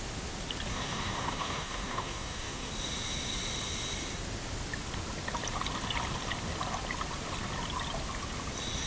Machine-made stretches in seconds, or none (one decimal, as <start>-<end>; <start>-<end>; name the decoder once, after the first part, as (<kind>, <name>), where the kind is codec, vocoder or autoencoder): 0.7-2.7 (codec, DAC)